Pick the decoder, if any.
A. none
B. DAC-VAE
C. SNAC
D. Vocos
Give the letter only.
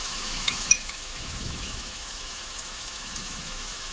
B